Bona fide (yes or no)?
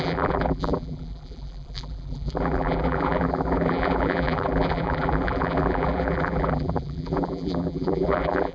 no